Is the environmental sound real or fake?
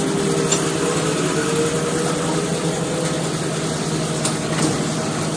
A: real